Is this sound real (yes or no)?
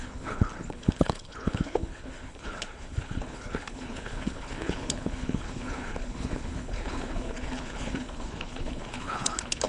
no